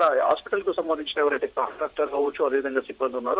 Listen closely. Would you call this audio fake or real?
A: fake